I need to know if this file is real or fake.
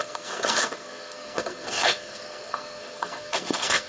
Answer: fake